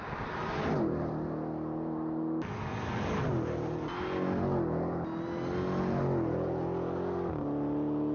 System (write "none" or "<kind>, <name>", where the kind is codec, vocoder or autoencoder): none